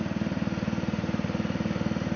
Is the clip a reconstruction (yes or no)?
no